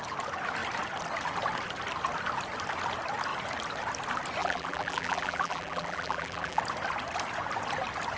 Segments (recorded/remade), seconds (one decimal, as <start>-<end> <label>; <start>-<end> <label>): 0.0-4.4 recorded; 4.4-6.6 remade; 6.6-8.2 recorded